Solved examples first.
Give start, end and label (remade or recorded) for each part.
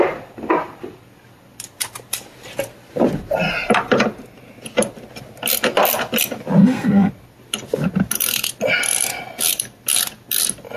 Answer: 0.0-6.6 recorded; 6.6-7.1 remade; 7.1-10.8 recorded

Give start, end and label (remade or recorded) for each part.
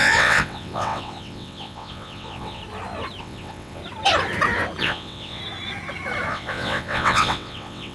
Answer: 0.0-2.6 remade; 2.6-3.2 recorded; 3.2-3.8 remade; 3.8-4.8 recorded; 4.8-5.4 remade; 5.4-6.3 recorded; 6.3-7.9 remade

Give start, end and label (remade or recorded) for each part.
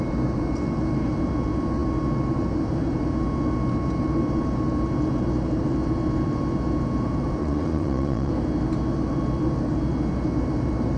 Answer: 0.0-7.4 recorded; 7.4-8.3 remade; 8.3-11.0 recorded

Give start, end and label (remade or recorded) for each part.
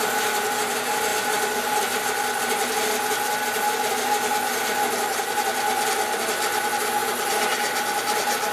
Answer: 0.0-8.5 recorded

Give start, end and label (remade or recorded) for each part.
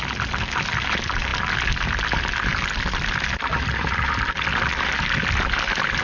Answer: 0.0-6.0 recorded